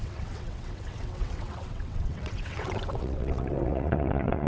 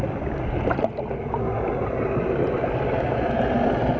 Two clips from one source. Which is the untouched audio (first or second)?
second